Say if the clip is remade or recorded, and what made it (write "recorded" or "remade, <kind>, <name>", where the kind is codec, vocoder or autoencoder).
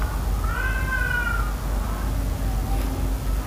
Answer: recorded